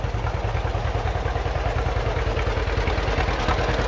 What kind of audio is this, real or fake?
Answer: real